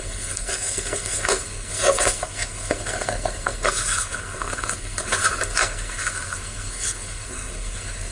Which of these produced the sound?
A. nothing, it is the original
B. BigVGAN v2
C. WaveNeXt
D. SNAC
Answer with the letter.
D